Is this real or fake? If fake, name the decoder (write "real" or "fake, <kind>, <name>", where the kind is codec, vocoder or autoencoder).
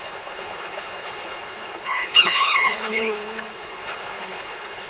fake, codec, HILCodec